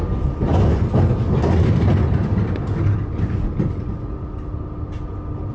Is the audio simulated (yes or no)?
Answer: no